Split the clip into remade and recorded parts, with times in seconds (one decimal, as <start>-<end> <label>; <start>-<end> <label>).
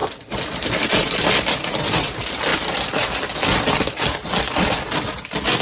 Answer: 0.0-5.6 recorded